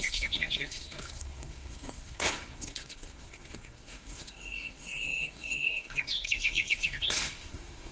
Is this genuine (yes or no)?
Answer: no